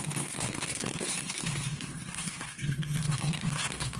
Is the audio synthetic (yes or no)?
yes